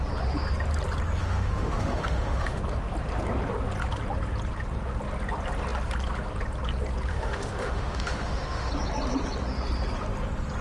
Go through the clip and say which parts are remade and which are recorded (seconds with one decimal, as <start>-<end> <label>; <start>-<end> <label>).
0.0-1.2 recorded; 1.2-2.6 remade; 2.6-7.1 recorded; 7.1-8.7 remade; 8.7-10.6 recorded